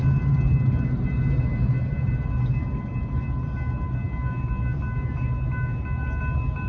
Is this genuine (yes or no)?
yes